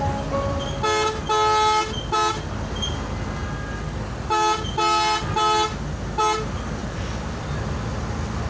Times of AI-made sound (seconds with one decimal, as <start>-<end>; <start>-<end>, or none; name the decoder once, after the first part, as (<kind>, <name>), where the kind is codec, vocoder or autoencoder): 6.8-7.7 (vocoder, BigVGAN v2)